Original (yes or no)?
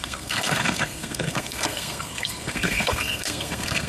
no